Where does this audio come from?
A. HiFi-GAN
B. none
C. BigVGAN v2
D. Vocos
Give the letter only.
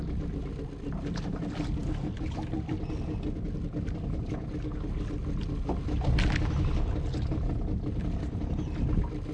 B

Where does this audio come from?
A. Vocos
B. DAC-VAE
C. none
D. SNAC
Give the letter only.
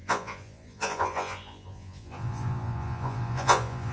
A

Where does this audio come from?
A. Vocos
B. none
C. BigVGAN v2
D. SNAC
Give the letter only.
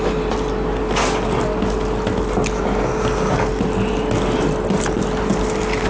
B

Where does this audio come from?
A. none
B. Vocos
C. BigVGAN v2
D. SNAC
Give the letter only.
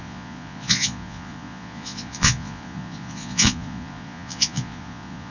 B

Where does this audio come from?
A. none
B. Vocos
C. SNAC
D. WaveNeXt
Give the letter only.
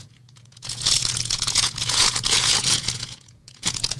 B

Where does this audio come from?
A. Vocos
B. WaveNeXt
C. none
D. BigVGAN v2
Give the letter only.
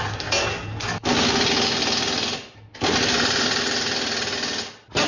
C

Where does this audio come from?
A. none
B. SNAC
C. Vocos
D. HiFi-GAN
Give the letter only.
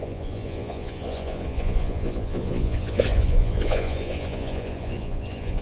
C